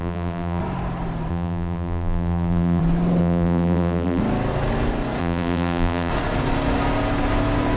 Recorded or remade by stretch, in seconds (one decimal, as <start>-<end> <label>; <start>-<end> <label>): 0.0-0.6 remade; 0.6-1.3 recorded; 1.3-2.8 remade; 2.8-3.2 recorded; 3.2-4.2 remade; 4.2-5.2 recorded; 5.2-6.1 remade; 6.1-7.8 recorded